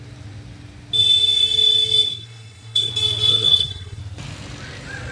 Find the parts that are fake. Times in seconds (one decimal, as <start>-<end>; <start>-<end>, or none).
2.1-2.9; 3.3-4.0